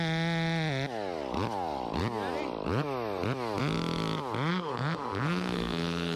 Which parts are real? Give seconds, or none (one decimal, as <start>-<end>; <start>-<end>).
0.0-4.5